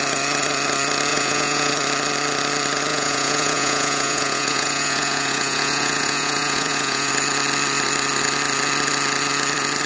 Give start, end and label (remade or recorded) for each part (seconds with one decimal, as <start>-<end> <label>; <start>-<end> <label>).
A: 0.0-1.1 recorded; 1.1-1.7 remade; 1.7-2.9 recorded; 2.9-7.1 remade; 7.1-9.9 recorded